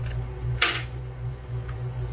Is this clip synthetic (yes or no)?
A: yes